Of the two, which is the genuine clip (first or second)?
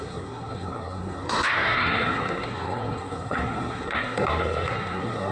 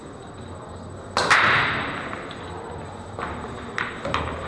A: second